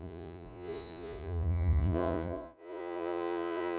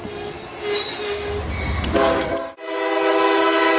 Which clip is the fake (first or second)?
first